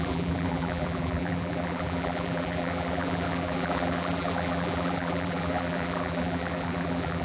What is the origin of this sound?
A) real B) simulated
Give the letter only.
B